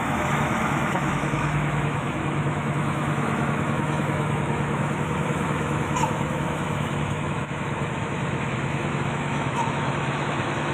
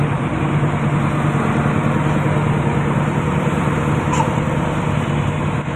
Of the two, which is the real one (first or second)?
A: second